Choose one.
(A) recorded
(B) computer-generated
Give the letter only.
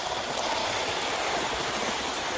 A